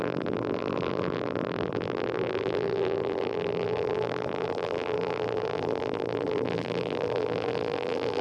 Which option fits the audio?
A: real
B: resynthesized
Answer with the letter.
B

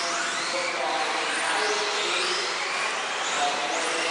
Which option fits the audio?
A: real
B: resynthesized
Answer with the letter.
A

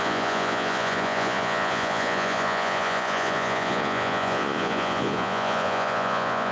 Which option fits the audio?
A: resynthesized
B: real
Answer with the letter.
A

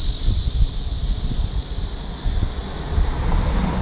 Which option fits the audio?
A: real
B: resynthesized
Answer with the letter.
A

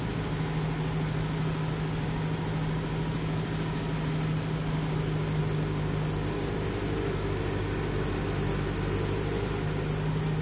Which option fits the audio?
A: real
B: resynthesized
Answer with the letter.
A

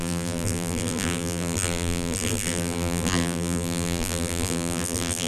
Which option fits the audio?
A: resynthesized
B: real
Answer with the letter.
A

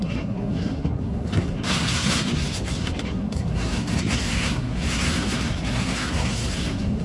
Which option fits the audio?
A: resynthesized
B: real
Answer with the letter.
A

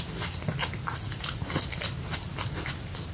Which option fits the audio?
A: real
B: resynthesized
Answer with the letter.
A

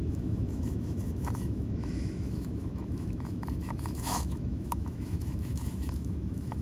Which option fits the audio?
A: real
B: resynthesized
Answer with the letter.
B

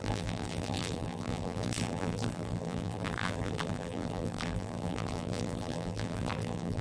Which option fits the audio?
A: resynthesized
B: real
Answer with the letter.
A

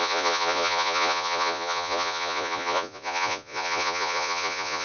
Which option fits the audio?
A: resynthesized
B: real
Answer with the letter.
A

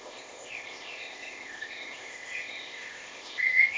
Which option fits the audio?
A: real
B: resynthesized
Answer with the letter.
B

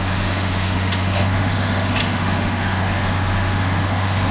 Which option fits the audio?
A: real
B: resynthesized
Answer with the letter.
B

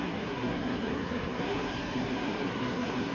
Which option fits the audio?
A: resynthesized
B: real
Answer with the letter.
A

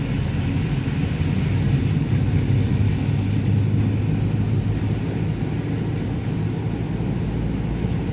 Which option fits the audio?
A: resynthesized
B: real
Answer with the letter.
B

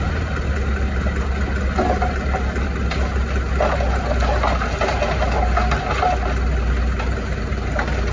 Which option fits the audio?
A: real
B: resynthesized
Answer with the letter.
A